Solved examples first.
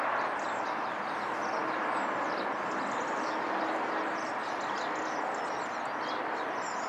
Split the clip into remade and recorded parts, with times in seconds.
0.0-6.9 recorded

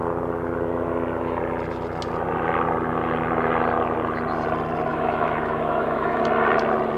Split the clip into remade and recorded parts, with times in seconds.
0.0-4.9 recorded; 4.9-6.2 remade; 6.2-7.0 recorded

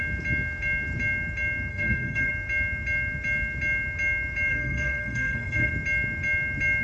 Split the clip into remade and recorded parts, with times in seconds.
0.0-1.7 recorded; 1.7-2.3 remade; 2.3-4.5 recorded; 4.5-5.7 remade; 5.7-6.8 recorded

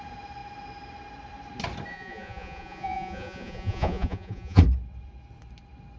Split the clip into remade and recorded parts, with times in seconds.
0.0-1.9 recorded; 1.9-4.6 remade; 4.6-6.0 recorded

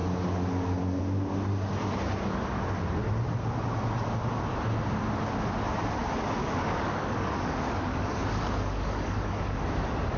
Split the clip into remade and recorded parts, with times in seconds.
0.0-6.4 recorded; 6.4-9.6 remade; 9.6-10.2 recorded

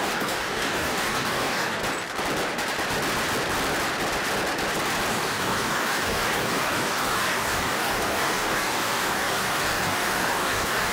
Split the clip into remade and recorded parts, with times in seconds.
0.0-1.8 remade; 1.8-5.1 recorded; 5.1-10.9 remade

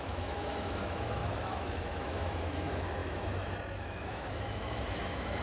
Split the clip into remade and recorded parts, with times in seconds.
0.0-5.4 remade